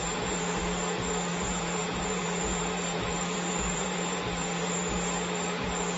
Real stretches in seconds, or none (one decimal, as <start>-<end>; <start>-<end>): 0.6-1.3; 4.9-6.0